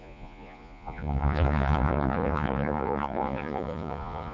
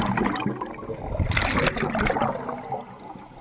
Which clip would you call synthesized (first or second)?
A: first